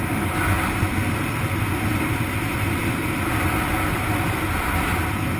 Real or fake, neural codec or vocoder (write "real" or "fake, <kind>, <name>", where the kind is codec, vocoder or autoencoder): real